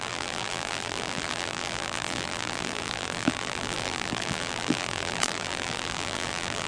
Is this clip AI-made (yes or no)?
yes